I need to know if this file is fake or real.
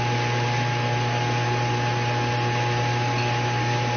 real